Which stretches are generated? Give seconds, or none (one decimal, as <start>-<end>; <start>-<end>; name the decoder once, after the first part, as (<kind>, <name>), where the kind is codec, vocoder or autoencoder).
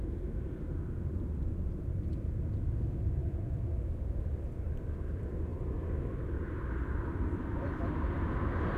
none